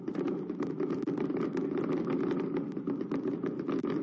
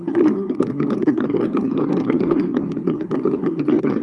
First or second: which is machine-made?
second